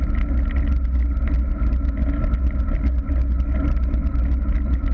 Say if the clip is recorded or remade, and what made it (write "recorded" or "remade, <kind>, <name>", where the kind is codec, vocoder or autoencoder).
recorded